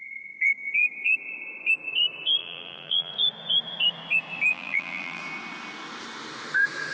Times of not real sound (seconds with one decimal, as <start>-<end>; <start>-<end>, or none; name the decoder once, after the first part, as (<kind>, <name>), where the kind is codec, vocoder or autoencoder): 2.4-3.1 (vocoder, BigVGAN v2); 4.5-5.2